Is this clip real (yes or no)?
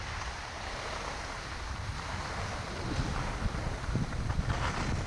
yes